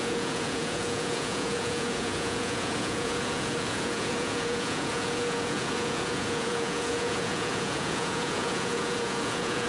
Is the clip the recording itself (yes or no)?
no